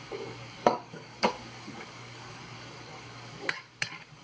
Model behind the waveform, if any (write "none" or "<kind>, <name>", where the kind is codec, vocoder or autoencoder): codec, DAC